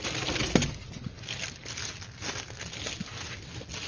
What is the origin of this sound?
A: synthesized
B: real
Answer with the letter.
B